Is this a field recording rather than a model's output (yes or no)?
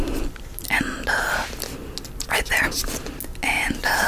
yes